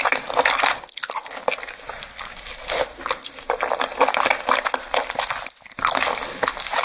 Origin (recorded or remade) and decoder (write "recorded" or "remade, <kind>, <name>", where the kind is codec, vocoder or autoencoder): recorded